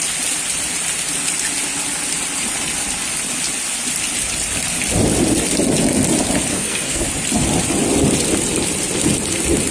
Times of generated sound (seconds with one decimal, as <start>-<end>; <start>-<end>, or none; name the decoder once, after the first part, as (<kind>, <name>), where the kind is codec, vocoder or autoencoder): 6.5-7.1 (codec, SNAC)